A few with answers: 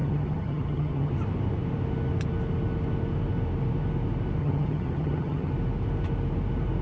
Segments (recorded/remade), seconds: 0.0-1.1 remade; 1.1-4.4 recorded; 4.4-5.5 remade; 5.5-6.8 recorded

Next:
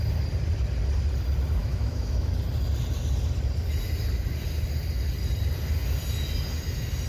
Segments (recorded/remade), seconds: 0.0-1.6 recorded; 1.6-2.3 remade; 2.3-7.1 recorded

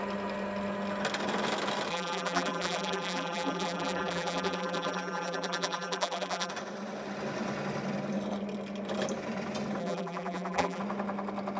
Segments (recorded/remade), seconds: 0.0-1.9 recorded; 1.9-6.5 remade; 6.5-9.8 recorded; 9.8-10.8 remade; 10.8-11.6 recorded

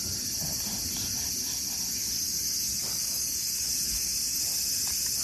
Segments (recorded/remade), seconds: 0.0-2.0 recorded; 2.0-4.4 remade; 4.4-5.2 recorded

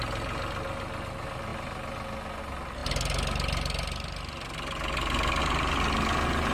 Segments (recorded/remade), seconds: 0.0-6.5 recorded

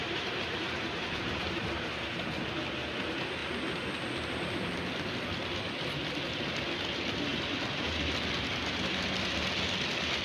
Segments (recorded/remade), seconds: 0.0-2.0 remade; 2.0-10.2 recorded